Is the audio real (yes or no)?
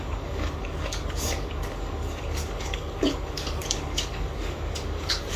no